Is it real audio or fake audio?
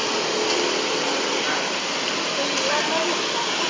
real